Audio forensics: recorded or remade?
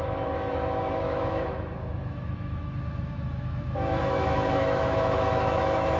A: remade